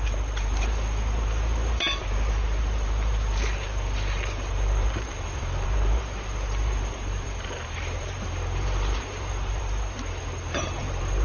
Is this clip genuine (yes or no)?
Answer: no